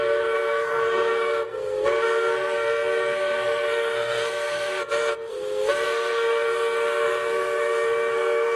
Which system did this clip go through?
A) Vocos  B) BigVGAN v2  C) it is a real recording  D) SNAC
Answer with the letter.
D